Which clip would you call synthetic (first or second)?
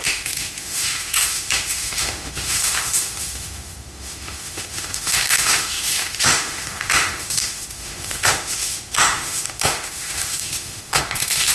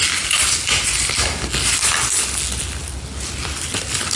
first